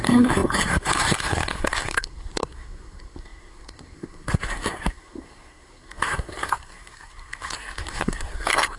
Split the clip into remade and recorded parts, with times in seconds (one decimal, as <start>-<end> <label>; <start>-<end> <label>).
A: 0.0-8.8 remade